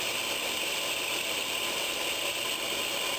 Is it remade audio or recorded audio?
recorded